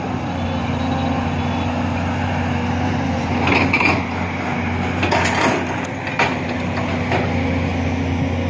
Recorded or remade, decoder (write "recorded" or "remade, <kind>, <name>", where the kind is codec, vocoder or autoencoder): recorded